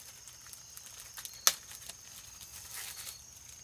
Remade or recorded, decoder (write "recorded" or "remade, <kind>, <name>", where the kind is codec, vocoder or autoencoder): recorded